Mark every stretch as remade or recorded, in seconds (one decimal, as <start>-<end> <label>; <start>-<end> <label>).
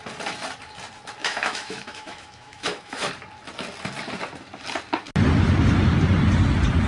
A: 0.0-1.2 recorded; 1.2-3.1 remade; 3.1-6.9 recorded